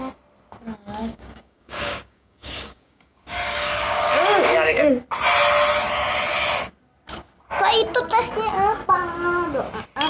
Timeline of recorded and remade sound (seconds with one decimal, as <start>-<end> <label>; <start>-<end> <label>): 0.0-1.0 recorded; 1.0-4.9 remade; 4.9-10.1 recorded